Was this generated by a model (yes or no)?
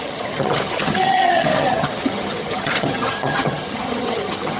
yes